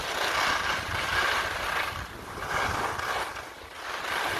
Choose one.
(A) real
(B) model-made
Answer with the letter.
A